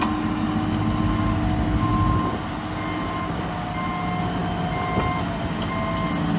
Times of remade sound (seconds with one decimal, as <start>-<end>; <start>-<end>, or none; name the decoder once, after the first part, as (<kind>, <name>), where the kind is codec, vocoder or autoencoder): none